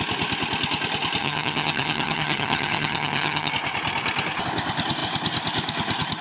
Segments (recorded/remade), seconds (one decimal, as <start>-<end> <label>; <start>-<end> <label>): 0.0-1.2 recorded; 1.2-3.5 remade; 3.5-6.2 recorded